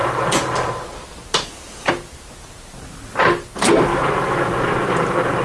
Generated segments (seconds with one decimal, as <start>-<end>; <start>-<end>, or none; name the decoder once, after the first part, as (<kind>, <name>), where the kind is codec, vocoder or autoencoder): none